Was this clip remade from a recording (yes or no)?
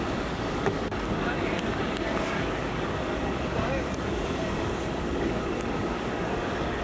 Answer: yes